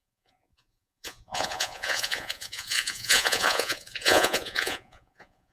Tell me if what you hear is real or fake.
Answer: fake